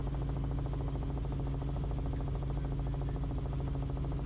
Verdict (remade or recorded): recorded